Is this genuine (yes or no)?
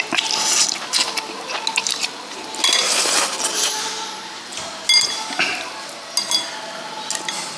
yes